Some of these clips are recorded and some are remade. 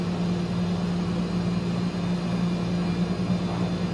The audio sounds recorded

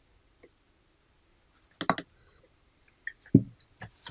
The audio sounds recorded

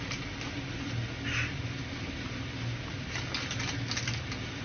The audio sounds recorded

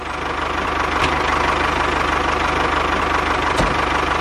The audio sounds recorded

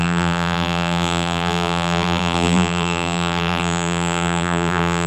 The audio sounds remade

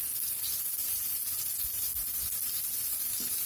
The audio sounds recorded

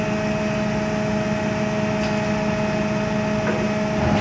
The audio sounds recorded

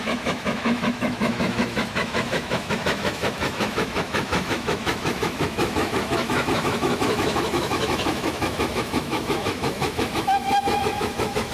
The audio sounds remade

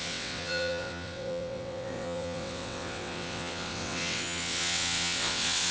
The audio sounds remade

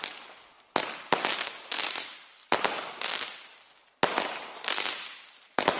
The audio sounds recorded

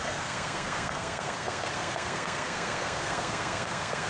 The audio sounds remade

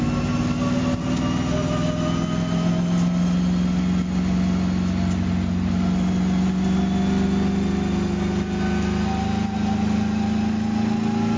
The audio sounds recorded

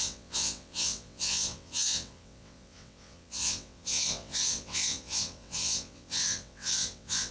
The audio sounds remade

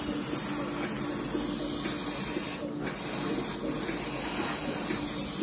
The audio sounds recorded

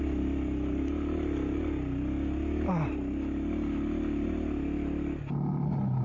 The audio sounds recorded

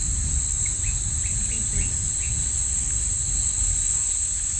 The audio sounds recorded